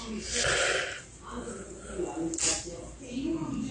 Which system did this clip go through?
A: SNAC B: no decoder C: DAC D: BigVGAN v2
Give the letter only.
B